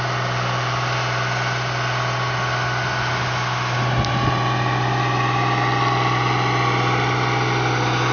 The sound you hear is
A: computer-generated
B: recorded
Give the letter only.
B